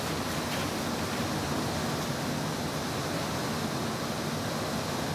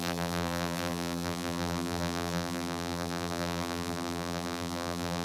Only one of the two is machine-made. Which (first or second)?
second